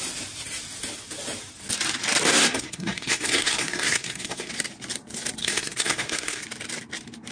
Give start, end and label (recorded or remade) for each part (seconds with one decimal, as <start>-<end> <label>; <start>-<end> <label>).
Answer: 0.0-2.3 recorded; 2.3-4.5 remade; 4.5-5.4 recorded; 5.4-6.4 remade; 6.4-7.3 recorded